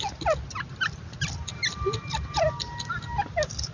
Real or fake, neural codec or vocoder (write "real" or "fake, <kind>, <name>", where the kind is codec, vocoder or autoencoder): real